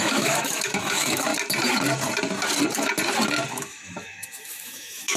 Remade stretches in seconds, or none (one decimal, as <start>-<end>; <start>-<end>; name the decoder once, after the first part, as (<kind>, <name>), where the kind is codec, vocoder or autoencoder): 0.0-1.3 (autoencoder, DAC-VAE); 3.5-5.2

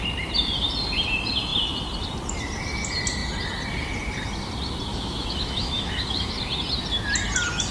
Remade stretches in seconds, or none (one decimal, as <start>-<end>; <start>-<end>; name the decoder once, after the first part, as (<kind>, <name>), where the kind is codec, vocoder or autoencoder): 4.9-6.3 (autoencoder, DAC-VAE)

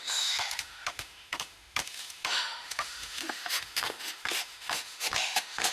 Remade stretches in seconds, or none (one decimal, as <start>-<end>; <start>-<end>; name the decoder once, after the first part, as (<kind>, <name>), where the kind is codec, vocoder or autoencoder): 0.0-5.7 (autoencoder, DAC-VAE)